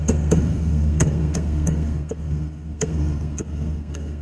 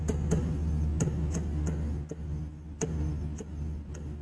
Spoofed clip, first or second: first